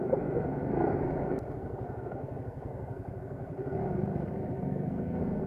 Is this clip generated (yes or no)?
yes